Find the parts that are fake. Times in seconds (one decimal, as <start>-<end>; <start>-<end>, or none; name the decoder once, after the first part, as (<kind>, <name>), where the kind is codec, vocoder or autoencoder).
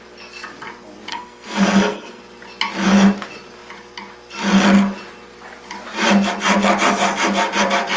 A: 1.1-2.2 (codec, SNAC)